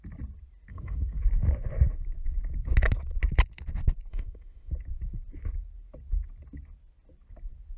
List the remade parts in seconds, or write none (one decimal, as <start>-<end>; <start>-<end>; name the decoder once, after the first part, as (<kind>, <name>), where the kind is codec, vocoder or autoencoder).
0.7-1.2 (autoencoder, DAC-VAE); 4.1-4.7